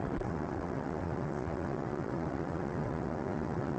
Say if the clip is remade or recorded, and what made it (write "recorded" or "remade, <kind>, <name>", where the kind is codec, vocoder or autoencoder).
remade, vocoder, WaveNeXt